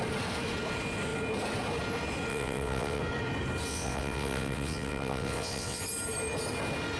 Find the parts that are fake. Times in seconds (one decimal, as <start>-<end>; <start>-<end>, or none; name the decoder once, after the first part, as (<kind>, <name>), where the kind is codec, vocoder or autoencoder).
2.3-3.0 (vocoder, WaveNeXt); 3.7-5.8